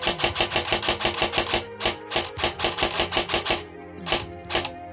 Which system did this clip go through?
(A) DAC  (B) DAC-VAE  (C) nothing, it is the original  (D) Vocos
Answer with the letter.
C